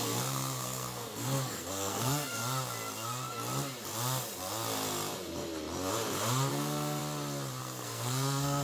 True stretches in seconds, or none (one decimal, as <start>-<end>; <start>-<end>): 2.4-6.5; 7.0-7.6